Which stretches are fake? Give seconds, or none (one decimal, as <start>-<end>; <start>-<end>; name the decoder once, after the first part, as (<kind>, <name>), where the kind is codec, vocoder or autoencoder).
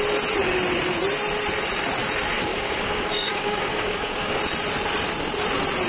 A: 2.5-4.4 (codec, DAC)